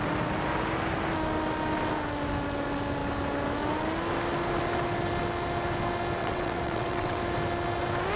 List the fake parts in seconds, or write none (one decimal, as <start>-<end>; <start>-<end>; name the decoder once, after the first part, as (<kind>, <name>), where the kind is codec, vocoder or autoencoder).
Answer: 6.2-7.2 (vocoder, WaveNeXt)